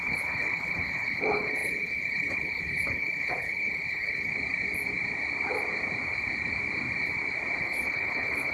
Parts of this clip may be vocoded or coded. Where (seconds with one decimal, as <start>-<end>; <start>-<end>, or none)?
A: 0.0-4.3; 7.6-8.5